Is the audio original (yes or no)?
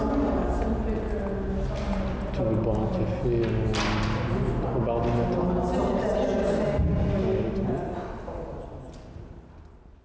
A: yes